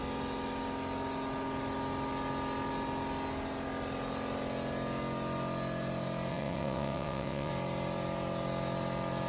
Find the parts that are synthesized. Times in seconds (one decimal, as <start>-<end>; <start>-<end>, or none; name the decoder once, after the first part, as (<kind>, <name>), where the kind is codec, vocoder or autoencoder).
6.3-7.5 (vocoder, WaveNeXt)